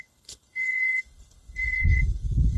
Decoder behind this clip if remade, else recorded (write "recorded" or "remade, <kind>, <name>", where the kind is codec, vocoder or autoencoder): remade, codec, HILCodec